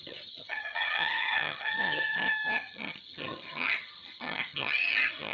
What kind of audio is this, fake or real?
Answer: fake